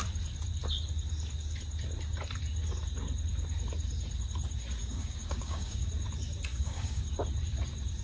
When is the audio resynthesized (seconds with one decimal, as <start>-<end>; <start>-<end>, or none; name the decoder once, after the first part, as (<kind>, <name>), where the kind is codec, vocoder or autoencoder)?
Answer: 4.8-5.9 (codec, DAC); 6.5-7.1